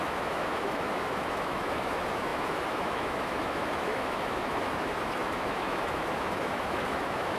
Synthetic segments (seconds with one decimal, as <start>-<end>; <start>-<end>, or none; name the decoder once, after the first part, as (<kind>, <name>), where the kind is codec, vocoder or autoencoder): 0.0-7.4 (autoencoder, DAC-VAE)